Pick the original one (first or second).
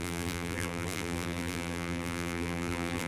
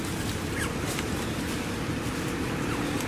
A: second